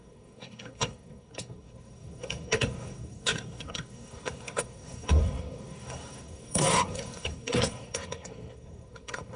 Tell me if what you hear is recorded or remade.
remade